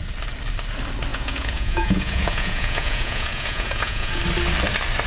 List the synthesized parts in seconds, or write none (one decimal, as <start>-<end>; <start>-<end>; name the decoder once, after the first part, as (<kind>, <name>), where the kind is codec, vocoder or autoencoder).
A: 1.1-4.2 (vocoder, Vocos)